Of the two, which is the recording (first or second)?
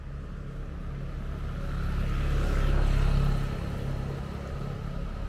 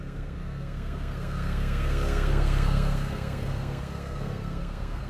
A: first